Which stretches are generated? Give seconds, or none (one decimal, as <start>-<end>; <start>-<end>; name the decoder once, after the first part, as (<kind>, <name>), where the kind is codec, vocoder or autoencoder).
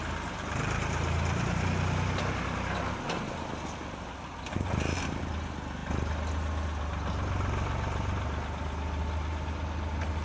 none